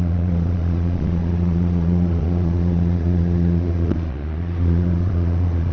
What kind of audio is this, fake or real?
fake